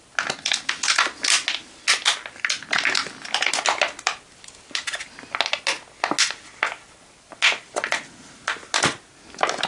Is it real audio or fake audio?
real